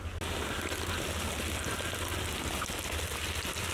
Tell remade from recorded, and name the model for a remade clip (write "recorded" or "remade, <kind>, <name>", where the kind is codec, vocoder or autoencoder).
recorded